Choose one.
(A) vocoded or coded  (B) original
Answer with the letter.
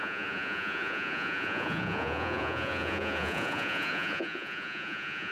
A